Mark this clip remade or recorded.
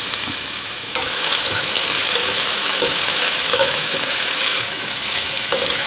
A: remade